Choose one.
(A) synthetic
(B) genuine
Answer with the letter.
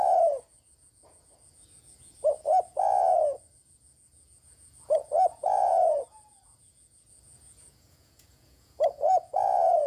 A